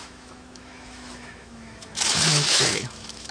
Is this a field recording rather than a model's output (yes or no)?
no